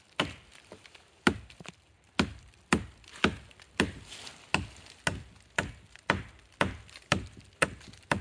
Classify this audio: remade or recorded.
recorded